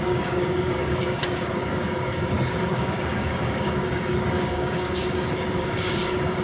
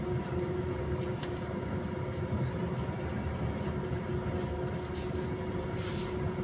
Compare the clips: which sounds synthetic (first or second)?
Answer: first